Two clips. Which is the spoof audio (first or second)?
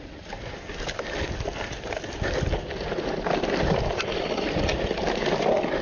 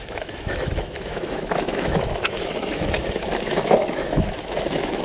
second